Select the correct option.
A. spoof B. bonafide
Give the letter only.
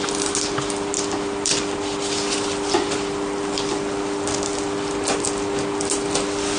B